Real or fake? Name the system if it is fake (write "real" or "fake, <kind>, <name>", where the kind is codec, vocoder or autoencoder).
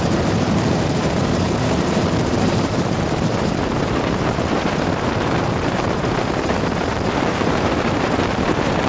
fake, vocoder, BigVGAN v2